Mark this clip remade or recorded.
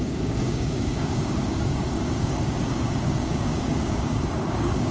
remade